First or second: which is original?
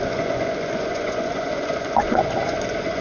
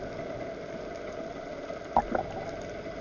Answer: second